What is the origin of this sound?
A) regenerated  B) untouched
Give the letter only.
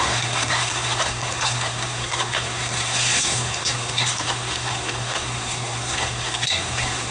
A